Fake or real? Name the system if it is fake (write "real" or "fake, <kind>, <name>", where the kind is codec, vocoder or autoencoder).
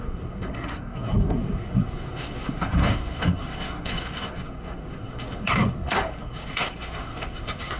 fake, codec, SNAC